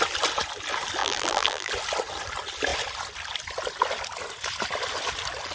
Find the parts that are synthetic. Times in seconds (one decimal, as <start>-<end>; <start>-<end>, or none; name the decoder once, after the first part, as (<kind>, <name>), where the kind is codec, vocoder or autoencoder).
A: 1.0-1.7 (vocoder, BigVGAN v2)